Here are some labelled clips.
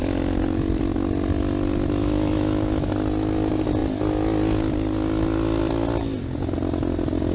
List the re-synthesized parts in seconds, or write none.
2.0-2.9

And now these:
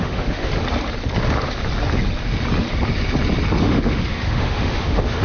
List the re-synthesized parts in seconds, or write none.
0.0-0.5; 3.6-5.2

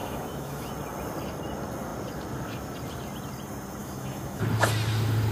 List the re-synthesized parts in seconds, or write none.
0.0-0.7; 3.8-4.4